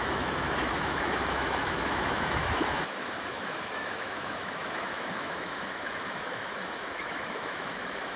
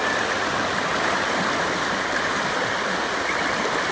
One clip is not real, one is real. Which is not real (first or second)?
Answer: first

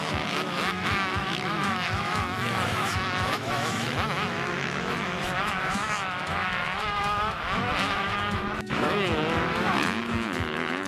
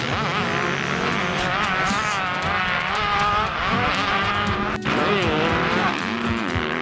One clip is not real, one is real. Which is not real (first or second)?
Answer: first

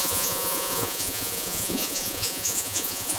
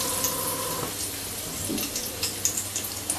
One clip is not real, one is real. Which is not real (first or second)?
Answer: first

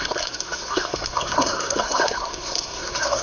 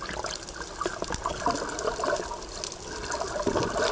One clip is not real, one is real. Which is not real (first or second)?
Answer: first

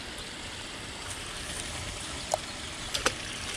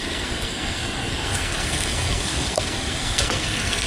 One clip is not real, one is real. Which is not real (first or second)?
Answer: second